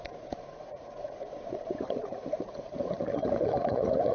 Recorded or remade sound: remade